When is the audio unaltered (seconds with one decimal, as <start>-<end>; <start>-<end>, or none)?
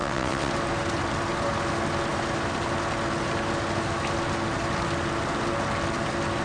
0.5-6.4